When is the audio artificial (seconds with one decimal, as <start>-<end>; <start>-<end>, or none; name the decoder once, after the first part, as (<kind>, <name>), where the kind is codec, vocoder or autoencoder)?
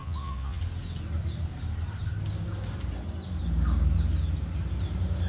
0.0-0.6 (vocoder, Vocos)